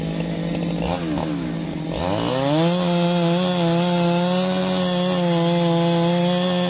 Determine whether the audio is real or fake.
real